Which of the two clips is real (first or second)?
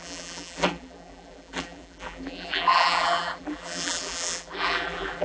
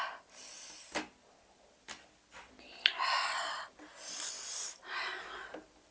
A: second